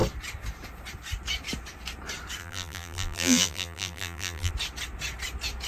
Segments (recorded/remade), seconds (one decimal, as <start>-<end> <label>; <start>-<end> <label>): 0.0-2.4 recorded; 2.4-4.5 remade; 4.5-5.7 recorded